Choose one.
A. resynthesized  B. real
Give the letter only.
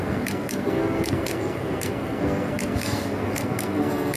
A